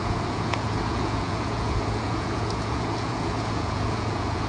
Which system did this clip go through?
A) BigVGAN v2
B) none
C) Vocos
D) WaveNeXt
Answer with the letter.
C